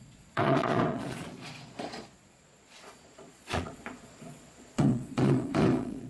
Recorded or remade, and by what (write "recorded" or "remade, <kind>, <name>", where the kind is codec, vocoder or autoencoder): remade, vocoder, Vocos